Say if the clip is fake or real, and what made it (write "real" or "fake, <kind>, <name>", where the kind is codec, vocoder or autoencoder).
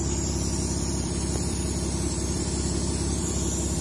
fake, vocoder, BigVGAN v2